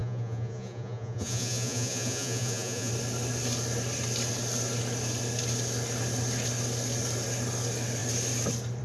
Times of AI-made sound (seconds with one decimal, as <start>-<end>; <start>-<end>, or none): 0.0-2.9